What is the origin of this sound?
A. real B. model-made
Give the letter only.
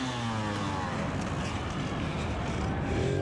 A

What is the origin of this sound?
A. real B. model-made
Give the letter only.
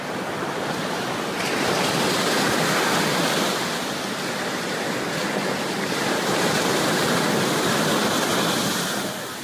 A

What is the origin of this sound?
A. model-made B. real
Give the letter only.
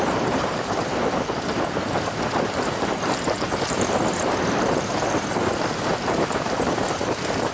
A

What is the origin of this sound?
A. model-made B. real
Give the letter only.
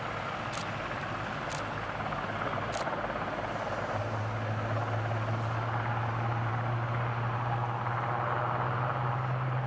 B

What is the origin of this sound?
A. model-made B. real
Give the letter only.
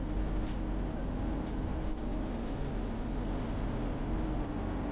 B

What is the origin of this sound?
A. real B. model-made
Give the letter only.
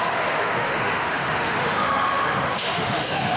B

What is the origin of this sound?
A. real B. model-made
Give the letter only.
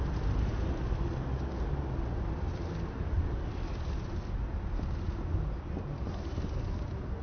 A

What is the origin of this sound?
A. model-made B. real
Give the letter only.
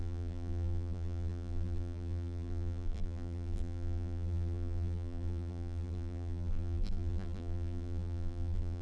A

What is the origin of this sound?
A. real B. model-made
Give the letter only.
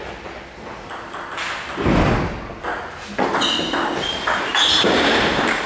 A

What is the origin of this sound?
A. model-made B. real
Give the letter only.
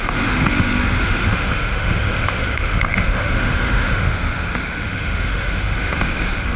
A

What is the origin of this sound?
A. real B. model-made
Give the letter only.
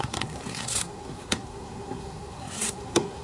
B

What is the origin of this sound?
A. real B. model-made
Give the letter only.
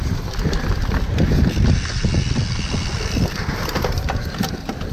A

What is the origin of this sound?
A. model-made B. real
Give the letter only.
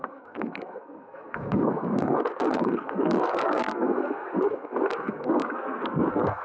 A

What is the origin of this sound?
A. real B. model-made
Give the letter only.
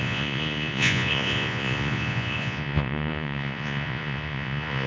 B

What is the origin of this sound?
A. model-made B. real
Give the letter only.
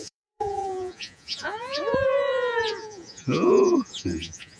A